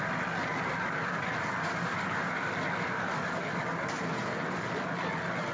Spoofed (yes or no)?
no